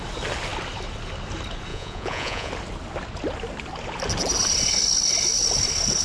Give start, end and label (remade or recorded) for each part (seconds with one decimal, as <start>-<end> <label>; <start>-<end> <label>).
0.0-1.7 recorded; 1.7-2.5 remade; 2.5-6.0 recorded

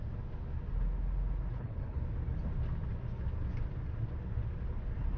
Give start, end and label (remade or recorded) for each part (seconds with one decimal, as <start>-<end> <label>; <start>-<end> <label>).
0.0-1.5 recorded; 1.5-2.0 remade; 2.0-5.2 recorded